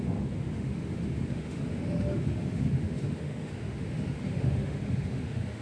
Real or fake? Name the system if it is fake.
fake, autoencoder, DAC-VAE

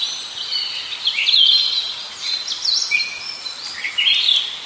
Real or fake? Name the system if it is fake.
real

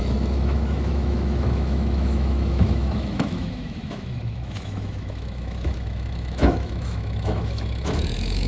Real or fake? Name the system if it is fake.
fake, autoencoder, DAC-VAE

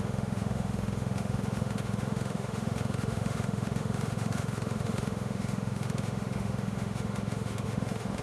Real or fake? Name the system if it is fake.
fake, autoencoder, DAC-VAE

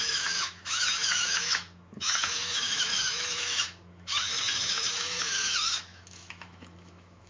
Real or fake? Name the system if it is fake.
fake, autoencoder, DAC-VAE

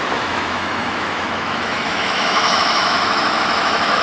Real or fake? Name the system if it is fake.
fake, autoencoder, DAC-VAE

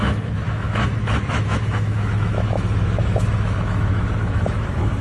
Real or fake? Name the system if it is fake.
fake, autoencoder, DAC-VAE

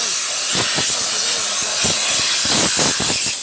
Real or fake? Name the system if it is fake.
real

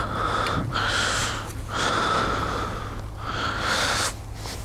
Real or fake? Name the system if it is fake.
real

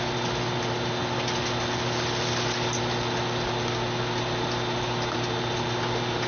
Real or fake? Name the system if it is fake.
real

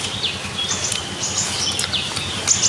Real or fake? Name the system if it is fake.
real